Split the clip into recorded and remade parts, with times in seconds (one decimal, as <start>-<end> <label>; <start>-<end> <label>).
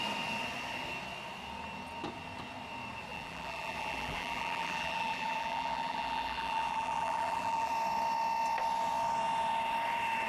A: 0.0-3.1 recorded; 3.1-7.7 remade; 7.7-10.3 recorded